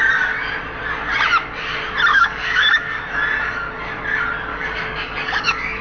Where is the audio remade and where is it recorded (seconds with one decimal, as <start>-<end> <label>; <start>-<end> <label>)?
0.0-2.1 recorded; 2.1-3.0 remade; 3.0-4.5 recorded; 4.5-5.8 remade